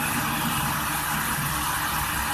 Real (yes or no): yes